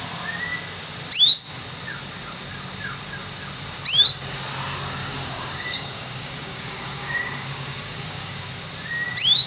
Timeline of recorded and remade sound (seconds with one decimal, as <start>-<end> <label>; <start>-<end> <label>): 0.0-5.0 recorded; 5.0-8.4 remade; 8.4-9.5 recorded